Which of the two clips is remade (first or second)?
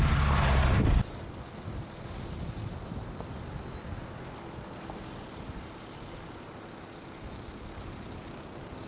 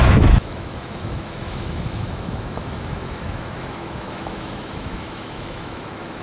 second